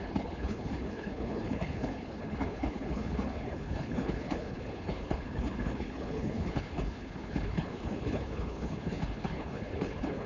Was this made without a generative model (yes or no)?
no